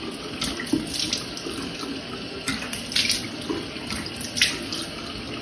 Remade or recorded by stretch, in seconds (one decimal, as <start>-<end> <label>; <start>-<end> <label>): 0.0-5.4 recorded